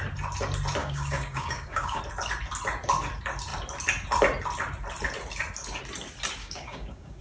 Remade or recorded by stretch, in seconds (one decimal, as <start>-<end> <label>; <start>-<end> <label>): 0.0-0.8 recorded; 0.8-2.0 remade; 2.0-6.4 recorded; 6.4-7.2 remade